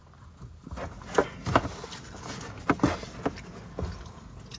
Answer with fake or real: real